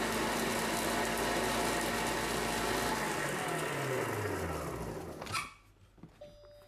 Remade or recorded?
recorded